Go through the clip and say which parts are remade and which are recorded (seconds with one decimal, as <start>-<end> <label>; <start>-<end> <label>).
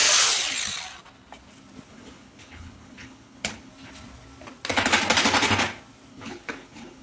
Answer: 0.0-1.9 recorded; 1.9-3.7 remade; 3.7-6.1 recorded; 6.1-7.0 remade